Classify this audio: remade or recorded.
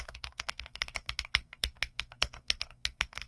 remade